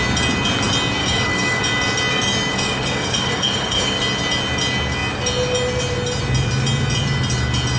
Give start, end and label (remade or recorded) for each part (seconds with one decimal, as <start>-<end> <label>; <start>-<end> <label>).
0.0-1.0 recorded; 1.0-1.6 remade; 1.6-2.5 recorded; 2.5-4.0 remade; 4.0-7.8 recorded